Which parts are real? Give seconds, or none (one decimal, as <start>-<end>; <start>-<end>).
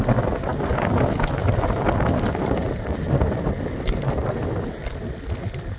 0.0-5.8